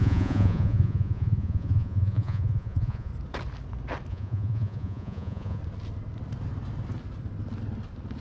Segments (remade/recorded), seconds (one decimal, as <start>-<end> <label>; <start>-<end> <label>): 0.0-3.1 remade; 3.1-4.1 recorded; 4.1-5.6 remade; 5.6-8.2 recorded